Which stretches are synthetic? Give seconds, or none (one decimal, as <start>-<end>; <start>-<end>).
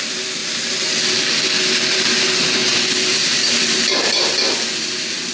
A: none